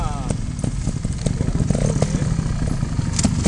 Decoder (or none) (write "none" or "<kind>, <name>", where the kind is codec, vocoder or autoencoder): none